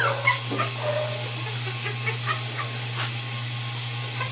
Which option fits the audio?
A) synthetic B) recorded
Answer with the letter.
B